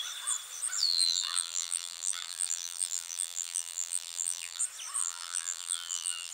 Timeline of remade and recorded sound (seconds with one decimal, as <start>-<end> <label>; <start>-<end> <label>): 0.0-0.8 recorded; 0.8-4.6 remade; 4.6-5.0 recorded; 5.0-6.3 remade